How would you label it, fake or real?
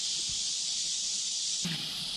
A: real